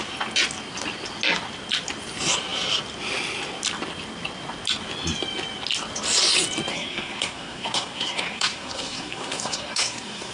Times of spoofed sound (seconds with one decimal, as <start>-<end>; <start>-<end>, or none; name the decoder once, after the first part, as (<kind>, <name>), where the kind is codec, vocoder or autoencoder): 6.7-10.3 (codec, SNAC)